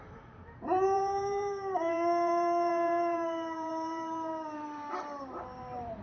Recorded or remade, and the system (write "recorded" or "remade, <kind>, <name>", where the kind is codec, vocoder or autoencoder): remade, vocoder, BigVGAN v2